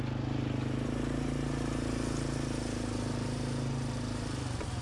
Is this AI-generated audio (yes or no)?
no